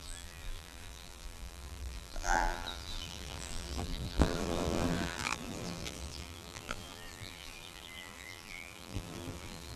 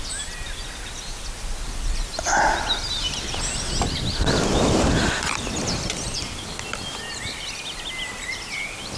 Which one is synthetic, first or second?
first